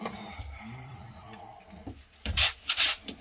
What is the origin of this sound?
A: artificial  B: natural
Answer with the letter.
A